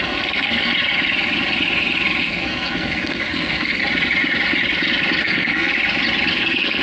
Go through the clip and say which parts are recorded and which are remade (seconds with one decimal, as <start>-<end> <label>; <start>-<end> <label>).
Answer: 0.0-0.7 remade; 0.7-2.2 recorded; 2.2-3.8 remade; 3.8-5.2 recorded; 5.2-5.7 remade; 5.7-6.3 recorded; 6.3-6.8 remade